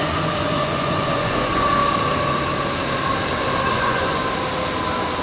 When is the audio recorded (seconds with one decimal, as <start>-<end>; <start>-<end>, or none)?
1.8-3.7; 4.2-5.2